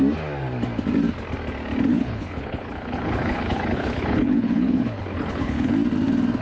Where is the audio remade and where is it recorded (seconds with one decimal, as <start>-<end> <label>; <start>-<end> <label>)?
0.0-1.9 recorded; 1.9-5.7 remade; 5.7-6.4 recorded